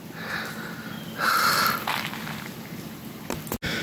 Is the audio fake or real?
real